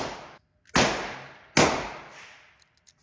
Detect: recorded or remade recorded